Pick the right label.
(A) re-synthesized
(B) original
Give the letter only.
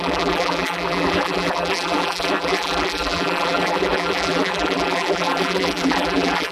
A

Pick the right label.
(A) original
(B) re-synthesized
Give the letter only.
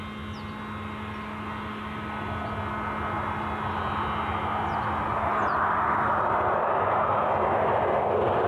A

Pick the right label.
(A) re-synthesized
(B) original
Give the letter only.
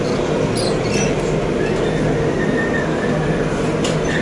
B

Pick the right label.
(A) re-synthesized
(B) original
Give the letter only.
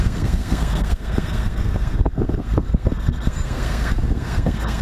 A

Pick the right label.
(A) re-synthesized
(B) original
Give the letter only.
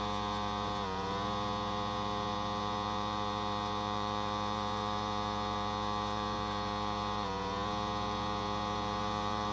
A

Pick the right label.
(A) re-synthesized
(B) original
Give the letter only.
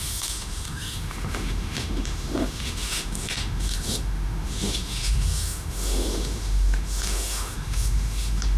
A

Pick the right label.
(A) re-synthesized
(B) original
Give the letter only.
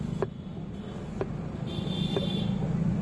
B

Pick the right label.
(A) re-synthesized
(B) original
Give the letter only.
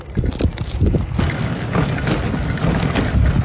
B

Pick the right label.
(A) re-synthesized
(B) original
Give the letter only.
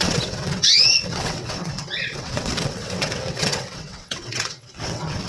A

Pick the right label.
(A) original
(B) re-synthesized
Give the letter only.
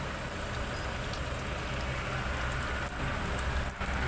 A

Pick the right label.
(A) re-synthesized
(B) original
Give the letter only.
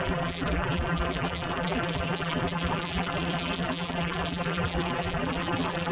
A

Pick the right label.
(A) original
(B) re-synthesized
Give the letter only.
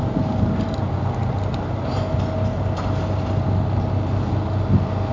A